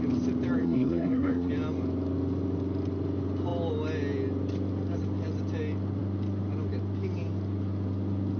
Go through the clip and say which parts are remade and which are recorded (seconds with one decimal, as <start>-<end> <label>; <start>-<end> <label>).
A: 0.0-0.6 recorded; 0.6-1.5 remade; 1.5-8.4 recorded